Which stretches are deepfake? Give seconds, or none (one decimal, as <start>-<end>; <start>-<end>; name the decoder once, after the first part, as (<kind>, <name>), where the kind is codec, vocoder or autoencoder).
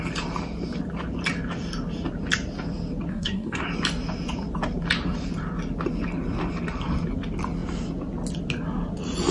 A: 3.1-3.6 (codec, SNAC)